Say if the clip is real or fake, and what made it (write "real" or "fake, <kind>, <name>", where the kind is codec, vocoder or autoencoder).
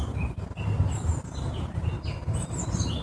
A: real